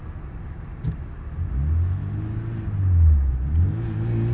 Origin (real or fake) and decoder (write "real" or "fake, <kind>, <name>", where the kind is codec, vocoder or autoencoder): real